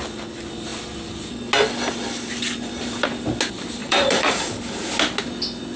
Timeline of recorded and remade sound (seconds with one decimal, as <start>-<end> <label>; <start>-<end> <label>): 0.0-3.8 recorded; 3.8-4.5 remade; 4.5-5.8 recorded